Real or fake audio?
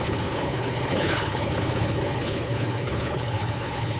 fake